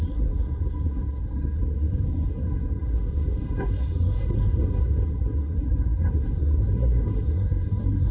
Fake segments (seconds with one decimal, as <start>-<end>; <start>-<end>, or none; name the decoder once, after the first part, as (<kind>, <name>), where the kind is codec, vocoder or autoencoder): 0.0-8.1 (codec, SNAC)